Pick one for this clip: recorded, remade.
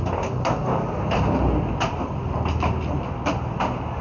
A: recorded